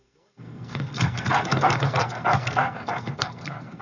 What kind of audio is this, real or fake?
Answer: fake